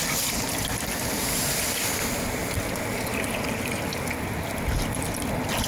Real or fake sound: real